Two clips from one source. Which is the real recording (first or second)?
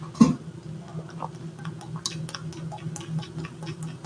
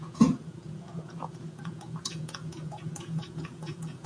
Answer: first